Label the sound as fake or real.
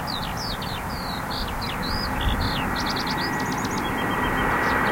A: real